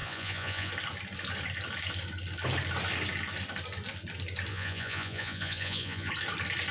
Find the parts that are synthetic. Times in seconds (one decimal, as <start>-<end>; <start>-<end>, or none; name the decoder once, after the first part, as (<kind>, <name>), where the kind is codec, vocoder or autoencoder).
0.0-0.7 (vocoder, Vocos); 4.5-6.1